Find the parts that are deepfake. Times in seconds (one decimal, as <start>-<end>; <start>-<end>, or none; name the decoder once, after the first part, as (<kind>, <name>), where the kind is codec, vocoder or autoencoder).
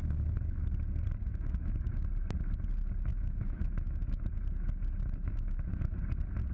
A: 1.3-1.9 (autoencoder, DAC-VAE); 3.1-4.2; 5.2-5.9